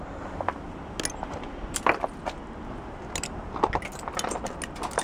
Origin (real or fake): real